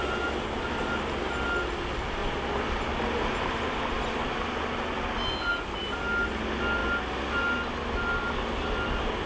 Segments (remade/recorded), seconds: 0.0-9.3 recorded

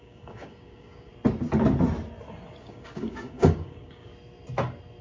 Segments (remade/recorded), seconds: 0.0-1.1 remade; 1.1-2.6 recorded; 2.6-4.1 remade; 4.1-5.0 recorded